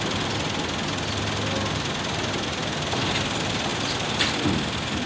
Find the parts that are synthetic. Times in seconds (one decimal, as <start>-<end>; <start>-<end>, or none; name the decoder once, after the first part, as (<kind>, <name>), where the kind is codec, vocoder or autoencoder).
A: none